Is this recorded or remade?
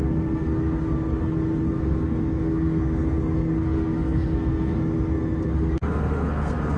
remade